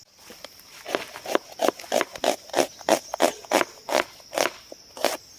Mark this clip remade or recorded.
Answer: recorded